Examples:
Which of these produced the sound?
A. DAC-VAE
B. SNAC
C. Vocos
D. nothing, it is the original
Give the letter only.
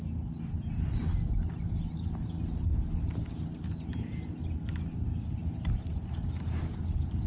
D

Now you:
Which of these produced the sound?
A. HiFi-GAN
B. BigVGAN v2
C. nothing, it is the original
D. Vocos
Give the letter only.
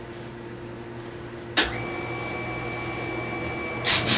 C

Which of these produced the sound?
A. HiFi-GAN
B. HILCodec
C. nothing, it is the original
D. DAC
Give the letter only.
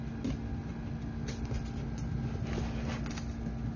C